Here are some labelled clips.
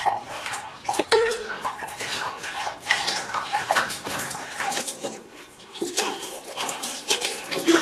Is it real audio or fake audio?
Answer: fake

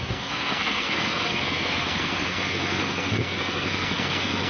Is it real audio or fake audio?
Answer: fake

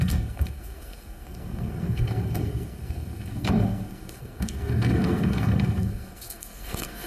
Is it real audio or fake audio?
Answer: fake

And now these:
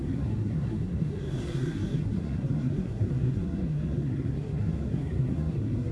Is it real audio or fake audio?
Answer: fake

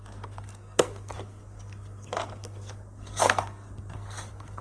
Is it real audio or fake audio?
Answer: fake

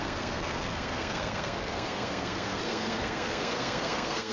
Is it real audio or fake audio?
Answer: fake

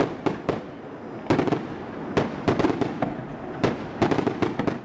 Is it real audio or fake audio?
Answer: real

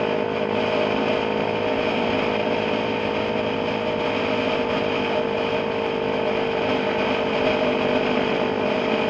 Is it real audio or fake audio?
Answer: real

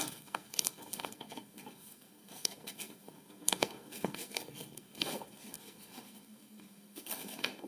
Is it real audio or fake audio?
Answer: fake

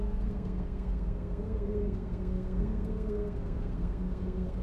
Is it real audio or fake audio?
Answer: fake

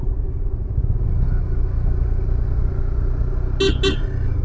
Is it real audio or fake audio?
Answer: real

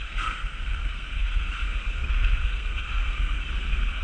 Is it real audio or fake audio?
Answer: fake